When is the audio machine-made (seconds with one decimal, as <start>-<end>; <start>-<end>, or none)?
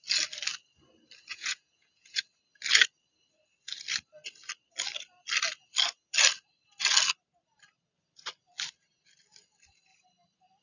1.3-2.2